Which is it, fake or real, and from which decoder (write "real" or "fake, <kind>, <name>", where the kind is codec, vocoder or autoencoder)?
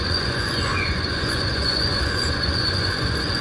fake, vocoder, Vocos